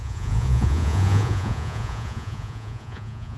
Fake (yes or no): yes